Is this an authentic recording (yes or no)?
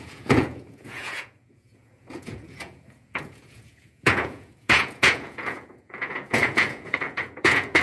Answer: no